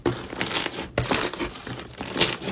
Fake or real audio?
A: real